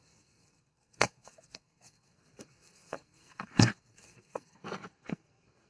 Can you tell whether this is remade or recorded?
remade